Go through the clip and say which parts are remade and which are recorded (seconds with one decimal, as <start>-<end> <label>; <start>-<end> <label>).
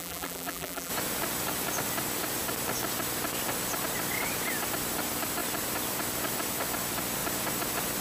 0.0-0.9 remade; 0.9-8.0 recorded